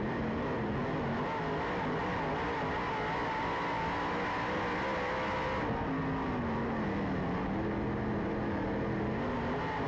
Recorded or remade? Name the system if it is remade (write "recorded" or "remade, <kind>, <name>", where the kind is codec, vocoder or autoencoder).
recorded